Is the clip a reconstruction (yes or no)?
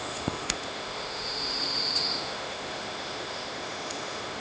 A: yes